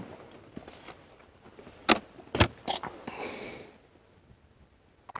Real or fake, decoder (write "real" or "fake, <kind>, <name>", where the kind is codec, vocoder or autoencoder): real